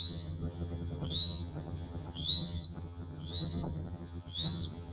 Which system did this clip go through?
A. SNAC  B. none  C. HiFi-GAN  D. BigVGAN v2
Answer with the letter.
C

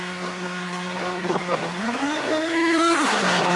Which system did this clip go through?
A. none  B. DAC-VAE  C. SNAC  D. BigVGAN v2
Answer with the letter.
C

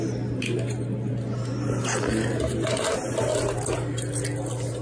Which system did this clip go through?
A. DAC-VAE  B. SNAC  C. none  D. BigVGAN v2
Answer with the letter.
C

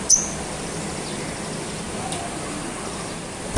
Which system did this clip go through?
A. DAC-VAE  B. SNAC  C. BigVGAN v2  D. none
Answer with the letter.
D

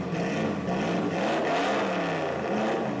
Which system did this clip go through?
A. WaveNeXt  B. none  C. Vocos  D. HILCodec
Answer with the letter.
B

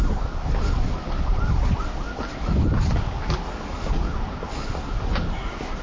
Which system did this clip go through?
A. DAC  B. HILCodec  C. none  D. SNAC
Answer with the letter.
C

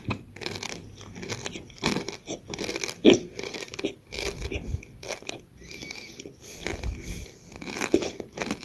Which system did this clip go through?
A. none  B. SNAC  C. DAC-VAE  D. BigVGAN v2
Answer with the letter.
A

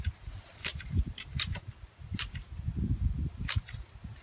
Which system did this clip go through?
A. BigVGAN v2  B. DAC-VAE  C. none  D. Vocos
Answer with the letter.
A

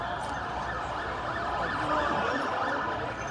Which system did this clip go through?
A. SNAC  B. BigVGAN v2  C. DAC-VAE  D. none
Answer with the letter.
D